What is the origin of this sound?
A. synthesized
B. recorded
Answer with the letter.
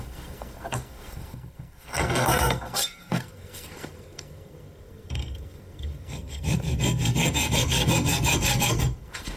A